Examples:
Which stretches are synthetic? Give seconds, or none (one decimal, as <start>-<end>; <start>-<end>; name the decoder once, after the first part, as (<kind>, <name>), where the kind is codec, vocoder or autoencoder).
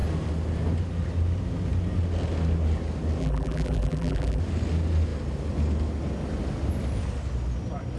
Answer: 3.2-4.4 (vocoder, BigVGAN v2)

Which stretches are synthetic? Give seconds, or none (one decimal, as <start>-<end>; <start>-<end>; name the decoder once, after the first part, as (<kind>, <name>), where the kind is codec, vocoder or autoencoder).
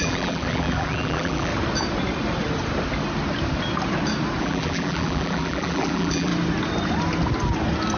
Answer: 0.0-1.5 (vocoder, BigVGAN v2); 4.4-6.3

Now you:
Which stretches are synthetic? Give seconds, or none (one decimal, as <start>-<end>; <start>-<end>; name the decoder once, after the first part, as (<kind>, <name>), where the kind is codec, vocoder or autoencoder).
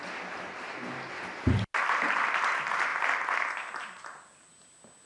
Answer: none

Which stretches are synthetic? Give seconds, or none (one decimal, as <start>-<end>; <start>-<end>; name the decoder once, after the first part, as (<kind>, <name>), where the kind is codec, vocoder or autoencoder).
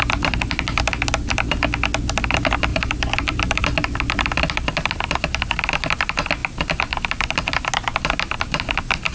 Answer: 2.7-3.6 (vocoder, BigVGAN v2)